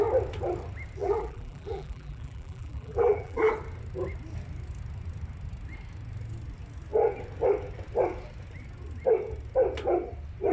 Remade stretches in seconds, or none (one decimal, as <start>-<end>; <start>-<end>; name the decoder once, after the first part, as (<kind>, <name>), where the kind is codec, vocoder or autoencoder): 1.0-3.5 (vocoder, BigVGAN v2)